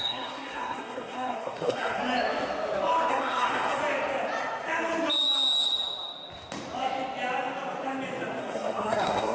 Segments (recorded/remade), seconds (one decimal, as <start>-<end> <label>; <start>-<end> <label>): 0.0-2.0 remade; 2.0-3.1 recorded; 3.1-3.8 remade; 3.8-8.4 recorded; 8.4-9.3 remade

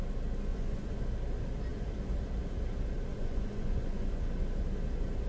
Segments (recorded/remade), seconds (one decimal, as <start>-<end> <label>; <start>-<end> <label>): 0.0-0.5 recorded; 0.5-1.0 remade; 1.0-3.1 recorded; 3.1-4.1 remade; 4.1-5.3 recorded

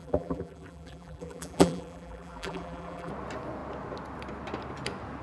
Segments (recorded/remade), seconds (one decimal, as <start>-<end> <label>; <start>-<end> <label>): 0.0-3.1 remade; 3.1-5.2 recorded

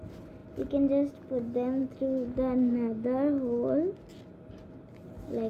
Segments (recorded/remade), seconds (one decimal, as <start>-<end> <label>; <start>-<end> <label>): 0.0-5.5 recorded

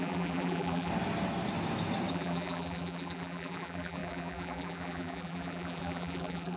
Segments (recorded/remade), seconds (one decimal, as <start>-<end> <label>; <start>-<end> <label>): 0.0-0.9 remade; 0.9-2.1 recorded; 2.1-6.6 remade